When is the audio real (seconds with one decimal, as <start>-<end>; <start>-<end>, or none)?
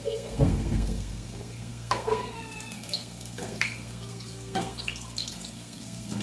none